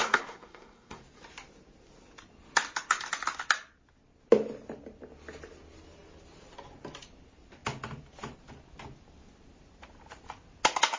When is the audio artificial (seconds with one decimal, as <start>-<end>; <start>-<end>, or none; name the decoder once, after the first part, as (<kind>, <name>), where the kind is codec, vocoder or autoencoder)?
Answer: 0.0-1.0 (codec, SNAC)